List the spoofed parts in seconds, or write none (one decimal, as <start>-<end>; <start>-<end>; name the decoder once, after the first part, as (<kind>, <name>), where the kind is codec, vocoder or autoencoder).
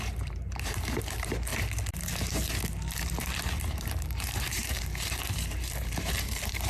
0.0-1.5 (vocoder, BigVGAN v2); 3.6-6.7